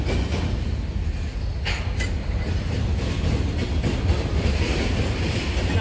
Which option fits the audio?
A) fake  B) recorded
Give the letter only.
B